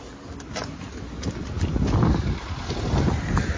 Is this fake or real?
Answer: real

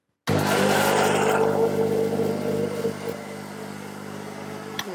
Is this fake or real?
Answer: real